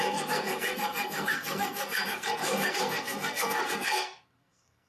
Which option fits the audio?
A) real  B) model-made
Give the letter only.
B